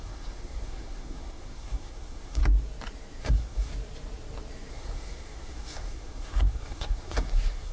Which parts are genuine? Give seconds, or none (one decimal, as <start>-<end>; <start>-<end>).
2.4-3.2; 3.7-4.7